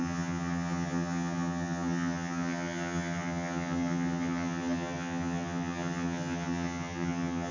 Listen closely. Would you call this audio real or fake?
fake